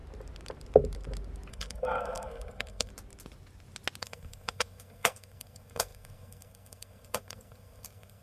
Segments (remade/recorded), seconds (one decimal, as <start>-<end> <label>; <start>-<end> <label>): 0.0-1.5 recorded; 1.5-2.9 remade; 2.9-4.0 recorded; 4.0-8.2 remade